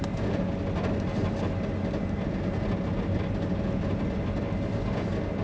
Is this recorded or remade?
recorded